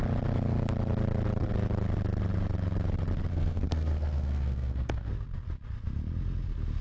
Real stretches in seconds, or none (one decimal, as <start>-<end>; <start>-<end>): 0.0-3.3; 5.1-6.8